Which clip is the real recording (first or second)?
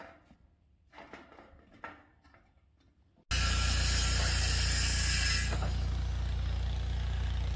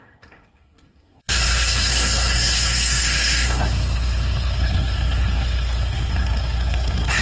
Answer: first